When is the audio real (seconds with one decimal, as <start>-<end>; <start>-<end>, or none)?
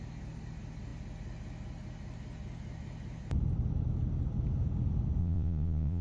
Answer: 0.0-5.2